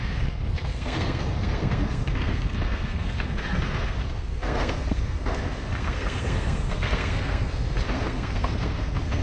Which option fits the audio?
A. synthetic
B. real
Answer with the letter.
A